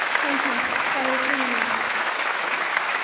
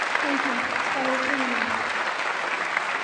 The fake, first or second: first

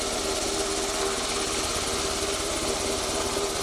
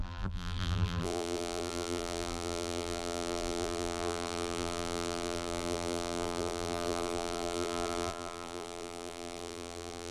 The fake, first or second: second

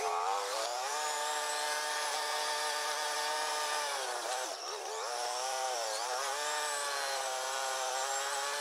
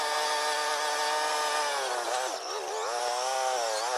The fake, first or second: first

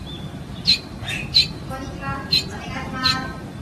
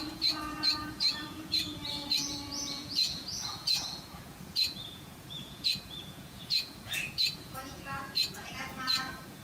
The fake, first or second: second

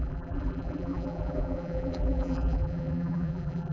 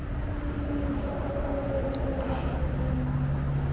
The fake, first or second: first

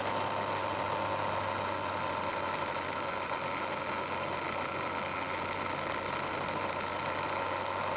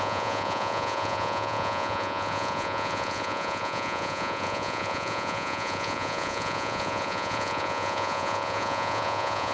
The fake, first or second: second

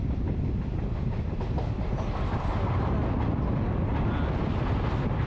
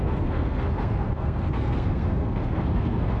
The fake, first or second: second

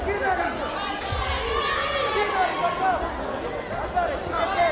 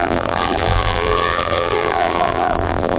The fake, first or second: second